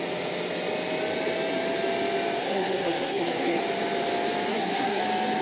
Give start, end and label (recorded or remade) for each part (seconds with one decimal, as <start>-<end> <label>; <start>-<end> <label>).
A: 0.0-2.4 recorded; 2.4-3.6 remade; 3.6-4.5 recorded; 4.5-5.0 remade; 5.0-5.4 recorded